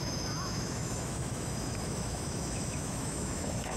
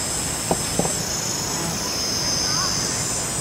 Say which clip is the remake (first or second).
first